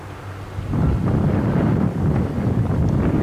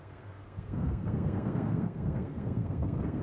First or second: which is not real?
second